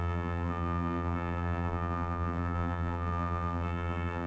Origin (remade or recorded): remade